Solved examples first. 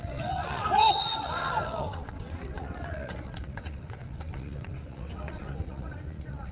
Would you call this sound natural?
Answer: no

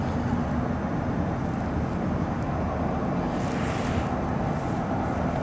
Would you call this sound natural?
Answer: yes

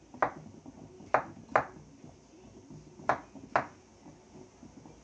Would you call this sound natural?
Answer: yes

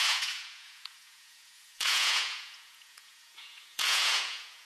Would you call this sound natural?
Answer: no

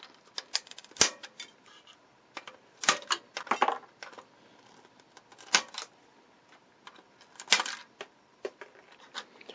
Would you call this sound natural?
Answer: yes